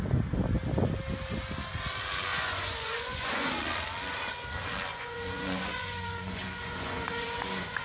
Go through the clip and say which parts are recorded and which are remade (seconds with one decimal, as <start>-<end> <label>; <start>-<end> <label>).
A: 0.0-2.3 recorded; 2.3-3.6 remade; 3.6-4.9 recorded; 4.9-7.8 remade